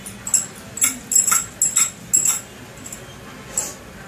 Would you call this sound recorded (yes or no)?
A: yes